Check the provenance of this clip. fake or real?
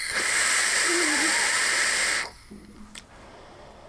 real